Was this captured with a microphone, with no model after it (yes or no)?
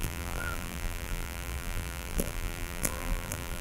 no